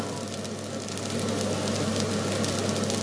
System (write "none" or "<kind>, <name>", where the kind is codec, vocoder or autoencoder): none